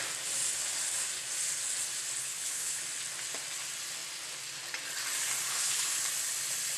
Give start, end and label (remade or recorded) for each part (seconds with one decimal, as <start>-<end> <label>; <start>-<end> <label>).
0.0-2.2 recorded; 2.2-2.8 remade; 2.8-5.5 recorded; 5.5-6.0 remade; 6.0-6.8 recorded